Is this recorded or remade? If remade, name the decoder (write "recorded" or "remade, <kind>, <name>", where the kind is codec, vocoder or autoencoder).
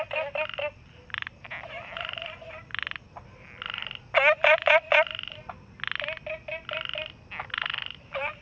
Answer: recorded